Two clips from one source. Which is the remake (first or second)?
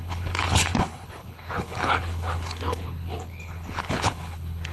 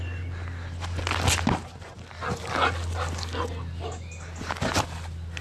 first